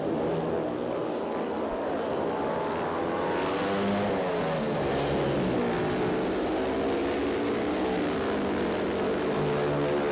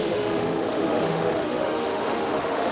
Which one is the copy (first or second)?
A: second